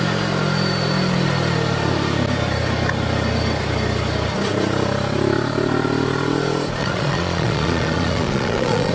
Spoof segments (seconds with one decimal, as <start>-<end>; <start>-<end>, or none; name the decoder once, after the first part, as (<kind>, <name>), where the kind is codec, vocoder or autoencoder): 6.8-8.9 (vocoder, Vocos)